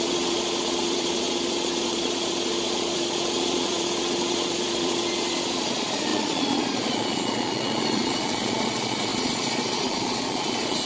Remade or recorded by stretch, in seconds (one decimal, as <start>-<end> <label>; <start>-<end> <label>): 0.0-10.9 remade